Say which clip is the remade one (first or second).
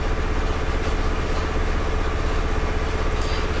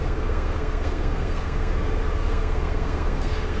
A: second